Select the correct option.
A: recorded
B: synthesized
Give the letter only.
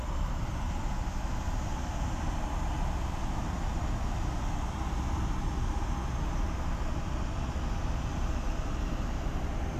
A